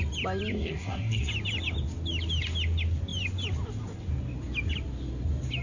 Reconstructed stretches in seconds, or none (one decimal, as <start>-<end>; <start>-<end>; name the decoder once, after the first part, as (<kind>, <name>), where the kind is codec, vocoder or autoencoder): 0.5-1.3 (codec, SNAC)